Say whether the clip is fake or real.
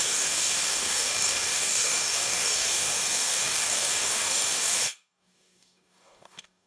fake